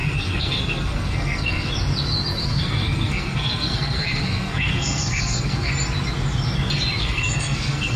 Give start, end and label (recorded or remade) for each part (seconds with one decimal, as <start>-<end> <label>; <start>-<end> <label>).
0.0-1.7 remade; 1.7-2.4 recorded; 2.4-5.7 remade; 5.7-7.0 recorded; 7.0-8.0 remade